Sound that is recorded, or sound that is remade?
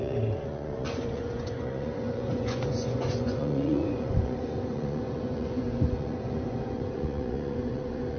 remade